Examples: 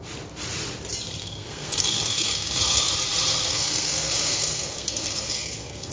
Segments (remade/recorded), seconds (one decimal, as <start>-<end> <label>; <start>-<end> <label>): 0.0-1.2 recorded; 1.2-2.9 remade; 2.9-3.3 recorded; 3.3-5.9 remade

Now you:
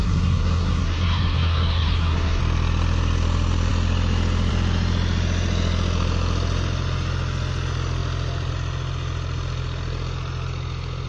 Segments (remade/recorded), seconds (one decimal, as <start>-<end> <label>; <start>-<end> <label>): 0.0-2.4 remade; 2.4-11.1 recorded

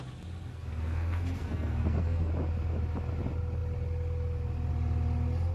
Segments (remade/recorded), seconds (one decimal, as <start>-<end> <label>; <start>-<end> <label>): 0.0-0.5 recorded; 0.5-2.3 remade; 2.3-5.5 recorded

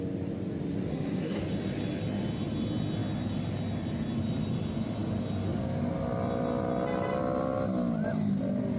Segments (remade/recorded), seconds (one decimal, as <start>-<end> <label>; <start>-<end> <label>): 0.0-0.9 recorded; 0.9-1.4 remade; 1.4-8.8 recorded